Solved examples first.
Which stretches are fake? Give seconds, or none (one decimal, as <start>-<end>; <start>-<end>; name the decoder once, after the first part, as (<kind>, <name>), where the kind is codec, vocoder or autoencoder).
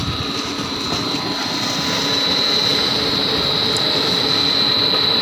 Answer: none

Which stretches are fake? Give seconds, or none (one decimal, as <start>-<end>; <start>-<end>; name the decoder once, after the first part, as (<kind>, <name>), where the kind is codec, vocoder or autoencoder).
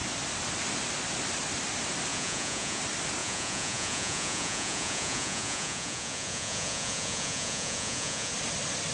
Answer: 2.1-2.8 (vocoder, Vocos); 3.2-8.3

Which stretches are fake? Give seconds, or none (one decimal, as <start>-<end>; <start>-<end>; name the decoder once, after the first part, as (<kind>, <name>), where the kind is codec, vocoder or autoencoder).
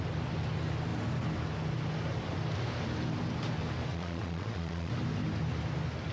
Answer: 3.9-4.9 (vocoder, Vocos)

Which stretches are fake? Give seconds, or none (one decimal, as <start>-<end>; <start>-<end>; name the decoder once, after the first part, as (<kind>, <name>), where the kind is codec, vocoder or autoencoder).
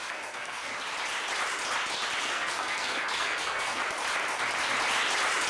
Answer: 0.0-0.7 (codec, SNAC); 2.2-3.8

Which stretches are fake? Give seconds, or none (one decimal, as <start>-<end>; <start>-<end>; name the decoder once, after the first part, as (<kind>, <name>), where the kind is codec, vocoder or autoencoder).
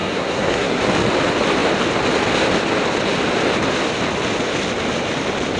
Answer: 0.0-0.8 (codec, SNAC)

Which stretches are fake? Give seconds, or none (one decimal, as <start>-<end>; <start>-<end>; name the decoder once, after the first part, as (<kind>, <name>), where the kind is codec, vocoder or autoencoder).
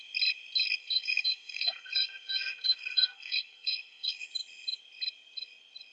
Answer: 0.8-4.3 (codec, SNAC)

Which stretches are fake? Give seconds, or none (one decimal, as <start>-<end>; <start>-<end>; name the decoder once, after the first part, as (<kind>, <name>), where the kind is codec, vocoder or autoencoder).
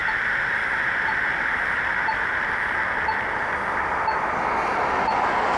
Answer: none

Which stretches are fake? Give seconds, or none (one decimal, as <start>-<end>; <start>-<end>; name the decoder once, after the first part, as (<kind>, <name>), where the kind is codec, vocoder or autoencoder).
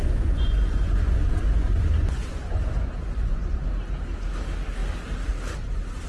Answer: 0.0-3.7 (vocoder, Vocos)